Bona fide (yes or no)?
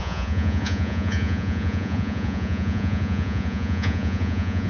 no